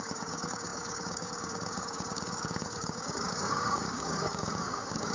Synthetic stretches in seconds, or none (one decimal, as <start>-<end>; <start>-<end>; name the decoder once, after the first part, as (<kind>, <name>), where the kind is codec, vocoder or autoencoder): 0.0-5.1 (codec, DAC)